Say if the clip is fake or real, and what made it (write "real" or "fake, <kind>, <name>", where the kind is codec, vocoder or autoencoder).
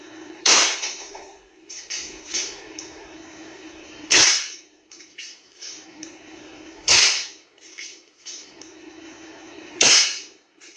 fake, codec, SNAC